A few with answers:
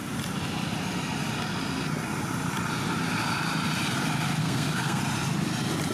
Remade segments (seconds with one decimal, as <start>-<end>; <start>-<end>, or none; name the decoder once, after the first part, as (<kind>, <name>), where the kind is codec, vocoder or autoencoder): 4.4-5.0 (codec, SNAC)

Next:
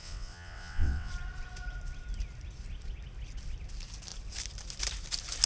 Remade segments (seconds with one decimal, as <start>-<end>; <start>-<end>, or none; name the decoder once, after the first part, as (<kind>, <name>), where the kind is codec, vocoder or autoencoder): 0.0-1.1 (vocoder, WaveNeXt)

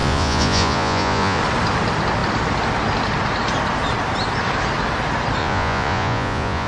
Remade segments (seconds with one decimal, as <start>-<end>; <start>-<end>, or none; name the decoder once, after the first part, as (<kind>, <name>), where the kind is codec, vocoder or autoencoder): 0.0-1.4 (vocoder, Vocos); 5.4-6.7

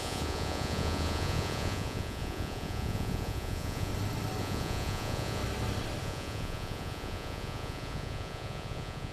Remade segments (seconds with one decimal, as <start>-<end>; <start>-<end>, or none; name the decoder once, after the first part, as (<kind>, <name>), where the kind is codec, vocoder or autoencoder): 0.0-3.9 (vocoder, Vocos); 4.4-5.4; 6.0-9.1

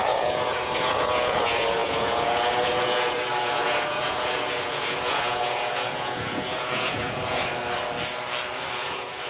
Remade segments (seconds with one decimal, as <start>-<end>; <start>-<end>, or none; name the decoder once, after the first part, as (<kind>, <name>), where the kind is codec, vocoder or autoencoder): 0.0-7.4 (vocoder, Vocos); 8.8-9.3

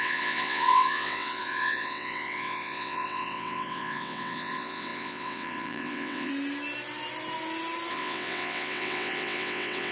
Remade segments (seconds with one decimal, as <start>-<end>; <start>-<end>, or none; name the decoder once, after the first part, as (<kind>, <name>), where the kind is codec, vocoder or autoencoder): 0.0-6.3 (vocoder, WaveNeXt); 7.9-9.9